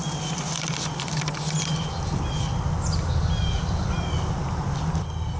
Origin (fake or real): real